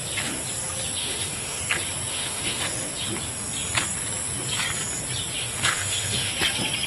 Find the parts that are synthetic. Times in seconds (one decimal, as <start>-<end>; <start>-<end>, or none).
1.0-1.6; 2.1-2.6; 5.4-6.3